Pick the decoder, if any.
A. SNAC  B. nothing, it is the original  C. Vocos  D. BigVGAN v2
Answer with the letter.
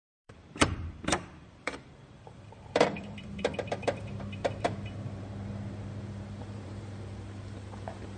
D